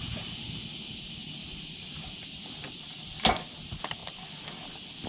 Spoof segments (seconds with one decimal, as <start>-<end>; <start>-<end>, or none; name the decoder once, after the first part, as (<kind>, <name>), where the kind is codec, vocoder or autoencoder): none